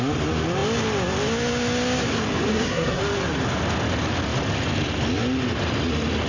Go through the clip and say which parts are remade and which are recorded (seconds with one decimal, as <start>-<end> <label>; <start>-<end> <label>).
0.0-2.5 recorded; 2.5-3.0 remade; 3.0-6.3 recorded